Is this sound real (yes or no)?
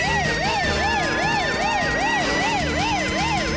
yes